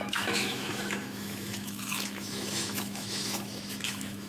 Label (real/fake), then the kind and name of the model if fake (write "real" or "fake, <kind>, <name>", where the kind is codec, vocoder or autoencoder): fake, autoencoder, DAC-VAE